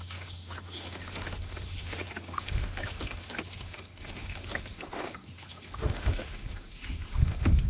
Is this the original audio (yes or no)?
no